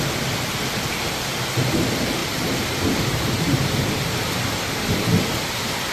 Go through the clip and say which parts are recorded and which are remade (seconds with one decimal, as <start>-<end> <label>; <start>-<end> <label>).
0.0-2.2 recorded; 2.2-4.5 remade; 4.5-5.9 recorded